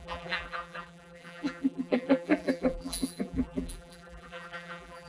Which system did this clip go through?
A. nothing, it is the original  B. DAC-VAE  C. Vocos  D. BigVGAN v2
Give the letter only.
D